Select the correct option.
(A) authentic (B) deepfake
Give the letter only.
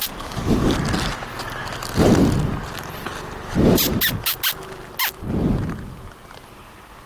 A